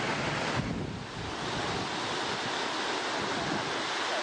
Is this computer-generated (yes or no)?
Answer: no